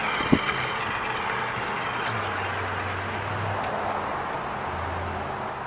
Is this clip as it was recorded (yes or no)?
yes